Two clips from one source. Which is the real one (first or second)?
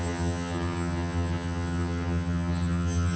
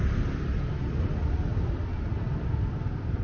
second